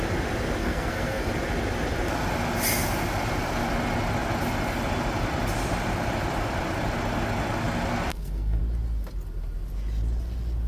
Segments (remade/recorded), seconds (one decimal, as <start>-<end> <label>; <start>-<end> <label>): 0.0-0.6 recorded; 0.6-1.3 remade; 1.3-8.1 recorded; 8.1-8.6 remade; 8.6-10.7 recorded